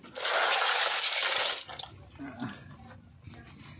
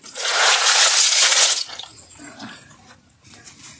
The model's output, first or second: second